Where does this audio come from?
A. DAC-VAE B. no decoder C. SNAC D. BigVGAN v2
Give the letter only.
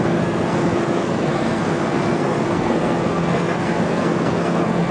C